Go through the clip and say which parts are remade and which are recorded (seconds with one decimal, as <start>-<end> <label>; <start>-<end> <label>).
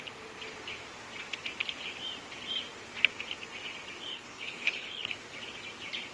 0.0-4.1 recorded; 4.1-5.1 remade; 5.1-6.1 recorded